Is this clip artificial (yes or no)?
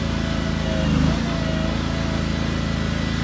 no